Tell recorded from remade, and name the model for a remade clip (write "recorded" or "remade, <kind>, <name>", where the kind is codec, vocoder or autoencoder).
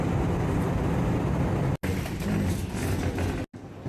recorded